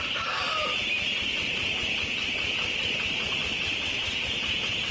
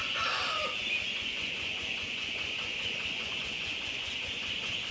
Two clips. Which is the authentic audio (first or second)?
first